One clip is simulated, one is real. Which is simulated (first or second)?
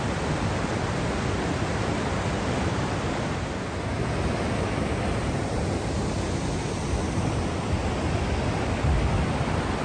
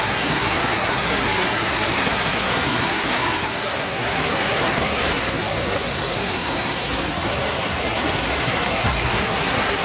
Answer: second